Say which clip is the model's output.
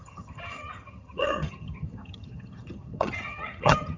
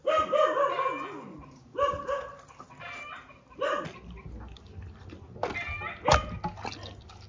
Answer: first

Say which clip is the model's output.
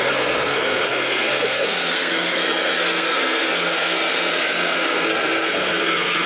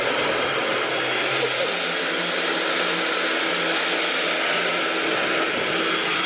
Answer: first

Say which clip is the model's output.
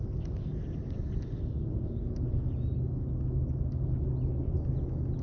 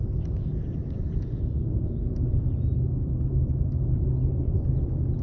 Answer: second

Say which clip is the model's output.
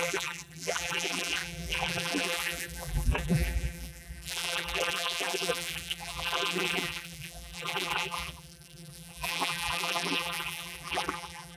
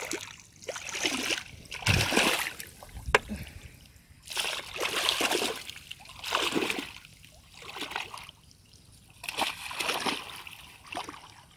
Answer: first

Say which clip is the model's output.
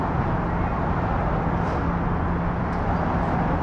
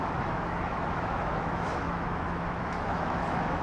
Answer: second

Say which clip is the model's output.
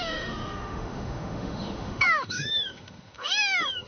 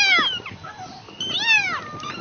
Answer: first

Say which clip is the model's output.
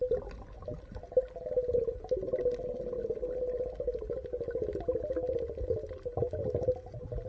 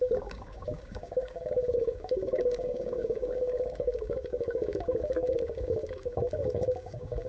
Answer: second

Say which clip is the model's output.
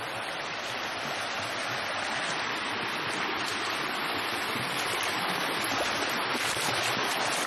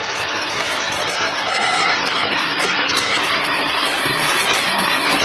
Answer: second